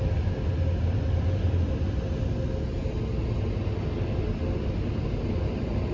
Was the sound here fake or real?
real